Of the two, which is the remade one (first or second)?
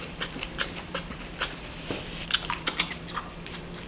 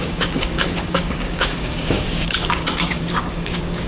second